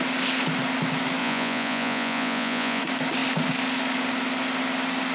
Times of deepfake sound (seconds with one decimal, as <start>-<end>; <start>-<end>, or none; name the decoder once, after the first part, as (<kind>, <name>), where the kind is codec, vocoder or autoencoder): 1.2-2.8 (vocoder, Vocos)